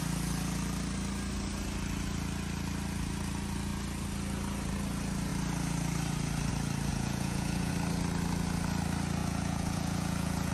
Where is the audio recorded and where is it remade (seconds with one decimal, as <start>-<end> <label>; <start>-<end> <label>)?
0.0-6.9 recorded; 6.9-7.7 remade; 7.7-9.2 recorded; 9.2-10.5 remade